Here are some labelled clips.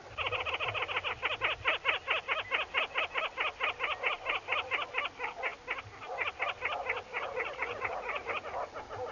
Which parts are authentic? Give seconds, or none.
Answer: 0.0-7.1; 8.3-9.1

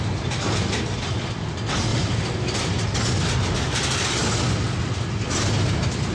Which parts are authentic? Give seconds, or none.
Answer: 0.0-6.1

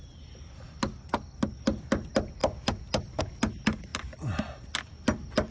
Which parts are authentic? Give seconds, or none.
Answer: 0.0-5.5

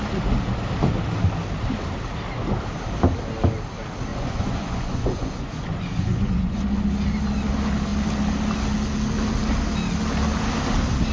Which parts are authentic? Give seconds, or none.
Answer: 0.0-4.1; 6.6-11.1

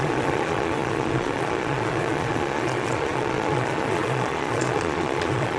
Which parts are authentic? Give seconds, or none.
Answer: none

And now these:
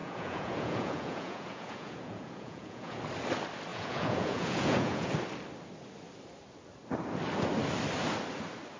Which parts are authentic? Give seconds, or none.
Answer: 3.0-3.7; 5.1-8.8

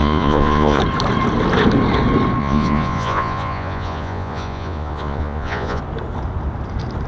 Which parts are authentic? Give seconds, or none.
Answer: 0.8-2.4; 5.8-7.1

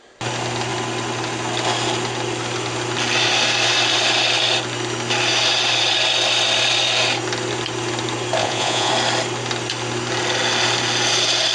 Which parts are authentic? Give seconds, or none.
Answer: 0.0-8.4; 8.9-11.5